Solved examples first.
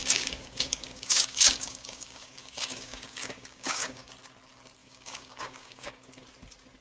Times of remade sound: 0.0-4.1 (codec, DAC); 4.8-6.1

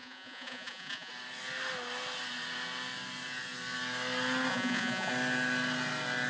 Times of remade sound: 0.0-1.1 (vocoder, Vocos); 4.5-5.1

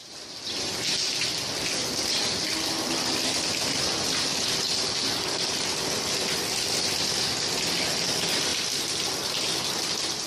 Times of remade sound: none

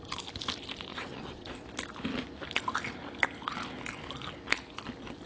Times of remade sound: 0.9-1.5 (vocoder, WaveNeXt)

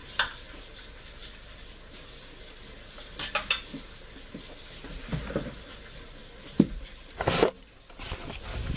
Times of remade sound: none

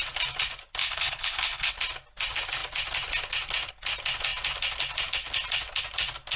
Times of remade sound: 0.8-1.7 (codec, HILCodec)

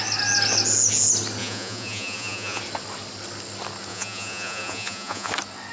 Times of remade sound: 1.4-2.6 (vocoder, Vocos); 3.9-5.3